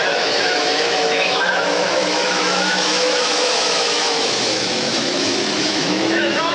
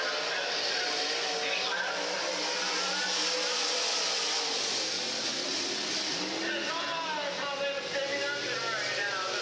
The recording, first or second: second